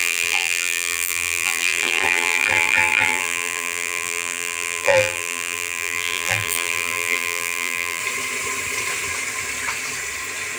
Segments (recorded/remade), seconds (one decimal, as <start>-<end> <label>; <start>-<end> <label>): 0.0-8.0 remade; 8.0-10.6 recorded